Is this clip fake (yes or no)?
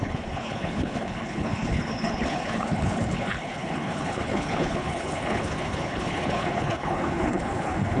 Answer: yes